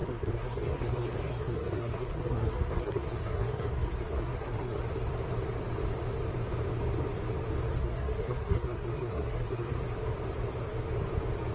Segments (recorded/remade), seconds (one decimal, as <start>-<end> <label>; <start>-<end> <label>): 0.0-4.8 remade; 4.8-7.8 recorded; 7.8-9.8 remade; 9.8-11.5 recorded